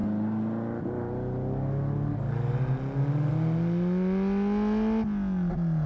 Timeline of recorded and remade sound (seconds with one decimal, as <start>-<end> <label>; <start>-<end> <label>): 0.0-5.9 recorded